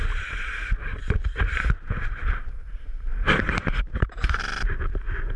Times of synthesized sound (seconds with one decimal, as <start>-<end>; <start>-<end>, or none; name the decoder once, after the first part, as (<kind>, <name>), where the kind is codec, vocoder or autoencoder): 0.0-1.0 (vocoder, BigVGAN v2); 2.3-5.4